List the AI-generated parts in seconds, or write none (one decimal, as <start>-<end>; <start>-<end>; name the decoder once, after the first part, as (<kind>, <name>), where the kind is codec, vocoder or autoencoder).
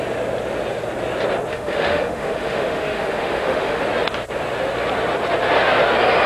1.5-3.8 (autoencoder, DAC-VAE)